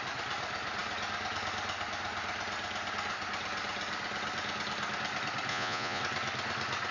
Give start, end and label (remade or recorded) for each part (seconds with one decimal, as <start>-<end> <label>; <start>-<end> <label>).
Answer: 0.0-5.5 recorded; 5.5-6.0 remade; 6.0-6.9 recorded